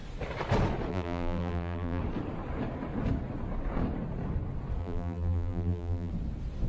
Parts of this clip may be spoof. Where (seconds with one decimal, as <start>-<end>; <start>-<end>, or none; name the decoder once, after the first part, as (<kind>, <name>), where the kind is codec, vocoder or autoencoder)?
0.9-2.0 (vocoder, BigVGAN v2); 4.8-6.1